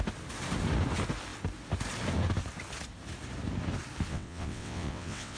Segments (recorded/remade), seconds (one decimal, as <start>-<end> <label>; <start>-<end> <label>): 0.0-4.1 recorded; 4.1-5.4 remade